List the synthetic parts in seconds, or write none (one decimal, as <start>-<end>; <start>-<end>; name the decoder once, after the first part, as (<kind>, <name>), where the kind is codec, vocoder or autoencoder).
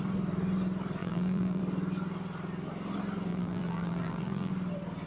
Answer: 1.0-1.6 (vocoder, BigVGAN v2); 3.3-4.5